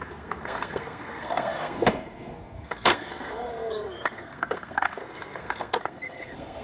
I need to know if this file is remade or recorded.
remade